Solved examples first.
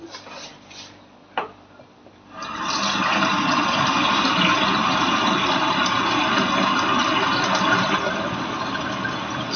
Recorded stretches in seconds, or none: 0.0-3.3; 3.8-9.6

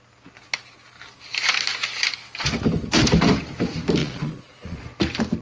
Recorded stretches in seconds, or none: 0.0-4.0; 4.8-5.4

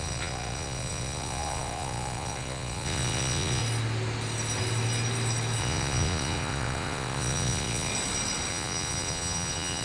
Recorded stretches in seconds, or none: 3.6-5.6; 7.9-8.5

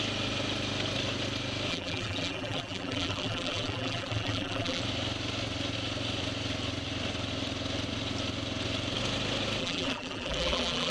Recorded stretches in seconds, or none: 0.0-1.7; 4.8-9.6